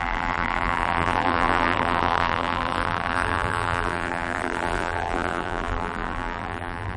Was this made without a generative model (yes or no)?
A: no